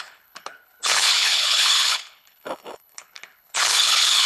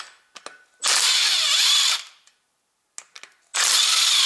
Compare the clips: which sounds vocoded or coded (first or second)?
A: first